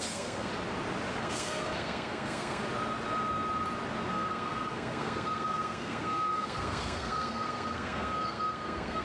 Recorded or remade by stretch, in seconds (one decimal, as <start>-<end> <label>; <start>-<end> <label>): 0.0-0.5 remade; 0.5-1.2 recorded; 1.2-2.6 remade; 2.6-4.1 recorded; 4.1-9.0 remade